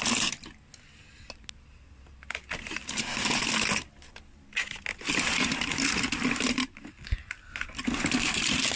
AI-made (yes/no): no